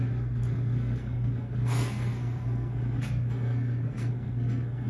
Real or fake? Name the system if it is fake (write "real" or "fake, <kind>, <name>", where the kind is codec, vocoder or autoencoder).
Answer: fake, codec, SNAC